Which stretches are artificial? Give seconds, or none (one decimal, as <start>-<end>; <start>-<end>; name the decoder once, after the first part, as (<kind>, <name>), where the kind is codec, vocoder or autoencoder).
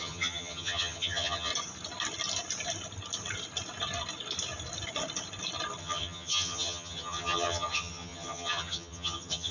0.0-1.5 (vocoder, HiFi-GAN); 5.8-9.5